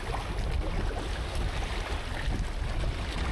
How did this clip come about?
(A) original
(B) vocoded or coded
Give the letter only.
A